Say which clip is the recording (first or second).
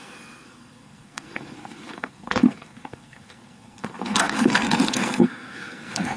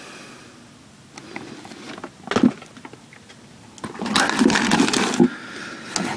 second